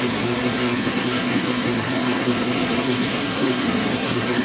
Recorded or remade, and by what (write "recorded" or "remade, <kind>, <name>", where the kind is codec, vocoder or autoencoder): remade, codec, SNAC